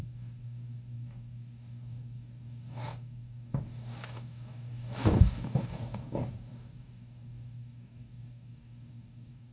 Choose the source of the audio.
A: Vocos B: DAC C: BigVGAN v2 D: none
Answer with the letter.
B